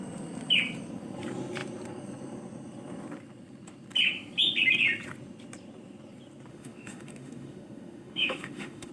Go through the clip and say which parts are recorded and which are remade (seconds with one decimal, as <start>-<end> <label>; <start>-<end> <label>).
0.0-6.5 recorded; 6.5-8.9 remade